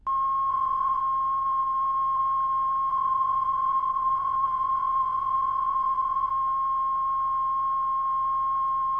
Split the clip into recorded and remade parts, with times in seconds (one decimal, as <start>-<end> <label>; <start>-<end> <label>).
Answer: 0.0-0.5 recorded; 0.5-1.0 remade; 1.0-2.9 recorded; 2.9-6.3 remade; 6.3-9.0 recorded